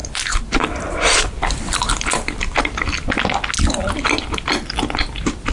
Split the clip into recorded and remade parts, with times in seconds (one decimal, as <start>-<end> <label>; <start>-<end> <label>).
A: 0.0-2.6 remade; 2.6-5.5 recorded